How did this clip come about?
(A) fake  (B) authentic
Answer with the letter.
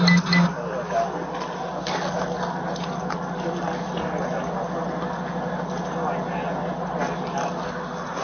B